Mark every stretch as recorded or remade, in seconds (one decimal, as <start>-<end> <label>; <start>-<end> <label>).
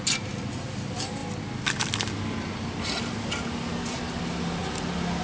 0.0-5.2 recorded